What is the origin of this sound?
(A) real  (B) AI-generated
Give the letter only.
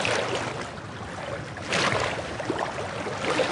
A